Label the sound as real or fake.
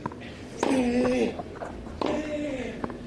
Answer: real